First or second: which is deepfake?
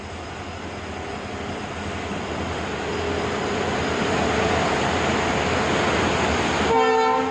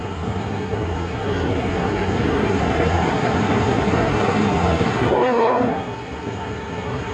second